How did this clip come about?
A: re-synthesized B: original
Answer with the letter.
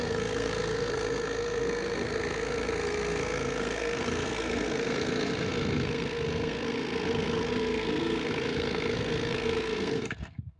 A